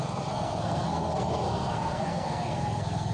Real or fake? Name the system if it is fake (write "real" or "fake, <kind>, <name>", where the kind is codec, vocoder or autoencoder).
fake, codec, SNAC